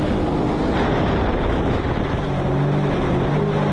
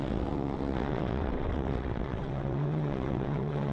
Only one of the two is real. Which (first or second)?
first